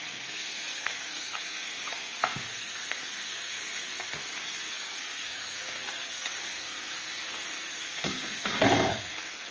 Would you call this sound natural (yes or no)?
no